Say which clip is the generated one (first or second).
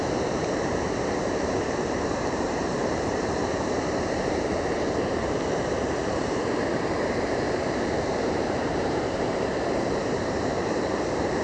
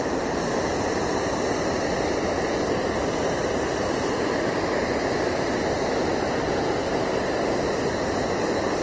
first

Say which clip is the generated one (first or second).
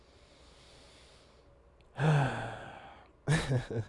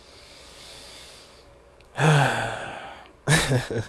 second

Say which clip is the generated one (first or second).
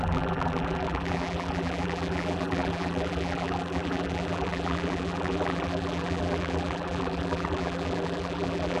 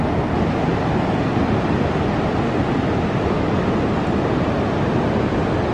first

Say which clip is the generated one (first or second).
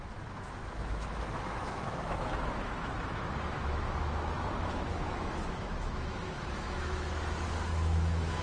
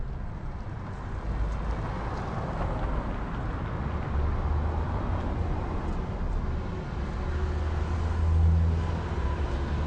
first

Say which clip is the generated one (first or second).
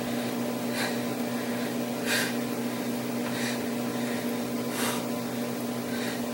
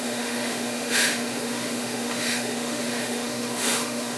second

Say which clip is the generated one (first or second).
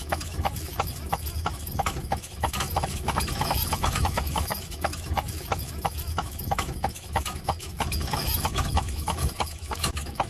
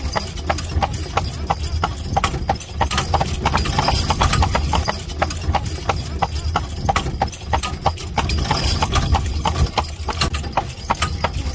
first